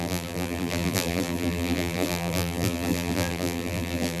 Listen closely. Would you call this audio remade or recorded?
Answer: remade